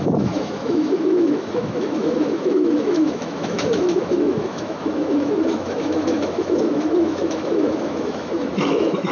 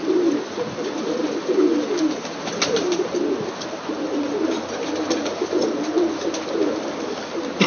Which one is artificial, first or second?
first